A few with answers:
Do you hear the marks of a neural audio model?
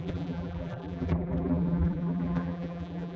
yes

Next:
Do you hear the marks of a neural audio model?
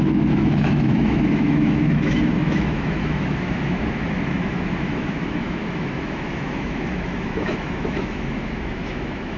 yes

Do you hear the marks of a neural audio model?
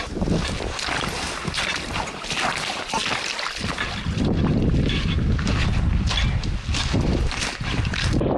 no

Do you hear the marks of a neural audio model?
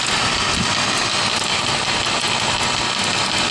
no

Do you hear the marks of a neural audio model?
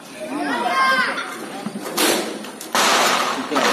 yes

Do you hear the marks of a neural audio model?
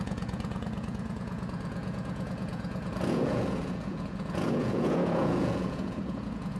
yes